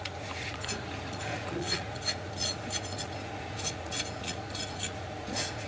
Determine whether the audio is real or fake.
fake